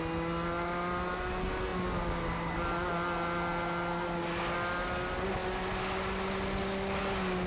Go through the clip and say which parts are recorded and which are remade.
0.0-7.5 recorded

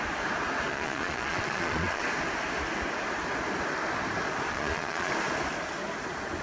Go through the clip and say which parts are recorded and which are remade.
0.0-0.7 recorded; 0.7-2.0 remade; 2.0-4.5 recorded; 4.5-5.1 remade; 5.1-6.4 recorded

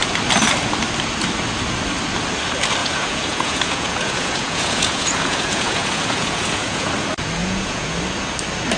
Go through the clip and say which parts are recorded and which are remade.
0.0-2.8 recorded; 2.8-6.9 remade; 6.9-7.4 recorded; 7.4-8.0 remade; 8.0-8.8 recorded